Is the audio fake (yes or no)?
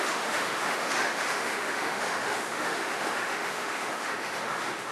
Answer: yes